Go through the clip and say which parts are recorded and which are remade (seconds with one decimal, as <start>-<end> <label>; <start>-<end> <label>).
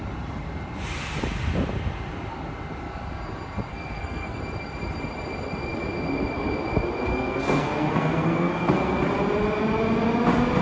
0.0-3.7 recorded; 3.7-4.4 remade; 4.4-7.1 recorded; 7.1-9.0 remade; 9.0-10.6 recorded